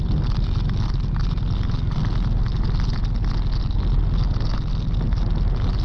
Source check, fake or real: real